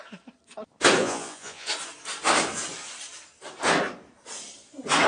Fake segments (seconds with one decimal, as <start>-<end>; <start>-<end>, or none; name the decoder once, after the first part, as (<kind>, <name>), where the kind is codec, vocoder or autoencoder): 1.0-1.7 (vocoder, Vocos)